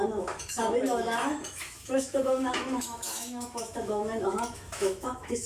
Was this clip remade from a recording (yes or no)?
yes